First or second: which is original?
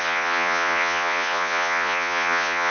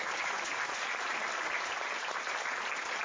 second